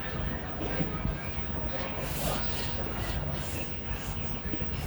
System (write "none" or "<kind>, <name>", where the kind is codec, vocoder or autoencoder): none